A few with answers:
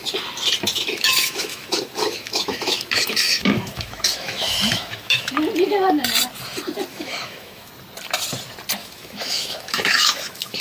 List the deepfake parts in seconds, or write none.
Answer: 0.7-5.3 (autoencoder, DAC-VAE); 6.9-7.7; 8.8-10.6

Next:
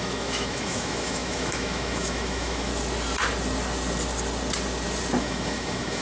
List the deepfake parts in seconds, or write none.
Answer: 0.0-2.7 (autoencoder, DAC-VAE); 5.2-6.0

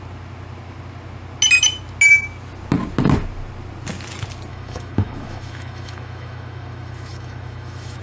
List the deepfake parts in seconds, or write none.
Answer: 4.5-8.0 (autoencoder, DAC-VAE)